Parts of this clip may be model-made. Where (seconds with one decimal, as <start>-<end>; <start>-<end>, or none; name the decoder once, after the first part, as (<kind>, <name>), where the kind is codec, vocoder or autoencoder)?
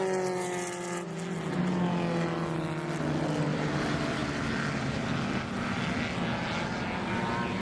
none